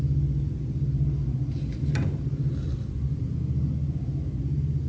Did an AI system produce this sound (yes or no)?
no